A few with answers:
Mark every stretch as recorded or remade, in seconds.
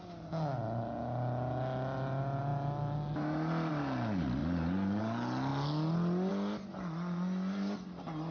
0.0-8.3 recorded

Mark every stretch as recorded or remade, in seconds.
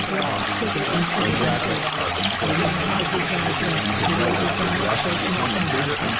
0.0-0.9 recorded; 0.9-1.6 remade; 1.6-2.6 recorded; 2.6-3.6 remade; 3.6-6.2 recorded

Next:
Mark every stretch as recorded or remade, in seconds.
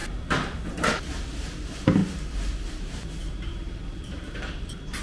0.0-0.8 recorded; 0.8-5.0 remade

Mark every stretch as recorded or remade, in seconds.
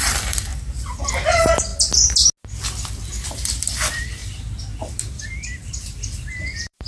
0.0-0.5 remade; 0.5-1.1 recorded; 1.1-1.7 remade; 1.7-3.3 recorded; 3.3-4.2 remade; 4.2-4.8 recorded; 4.8-6.9 remade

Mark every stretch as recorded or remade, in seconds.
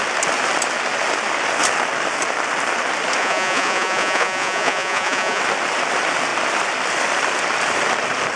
0.0-3.2 recorded; 3.2-5.4 remade; 5.4-8.4 recorded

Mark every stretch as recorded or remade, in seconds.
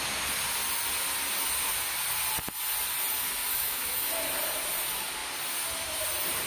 0.0-3.5 recorded; 3.5-4.1 remade; 4.1-6.5 recorded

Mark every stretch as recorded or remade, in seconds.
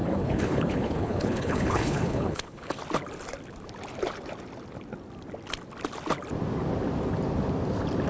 0.0-2.8 remade; 2.8-8.1 recorded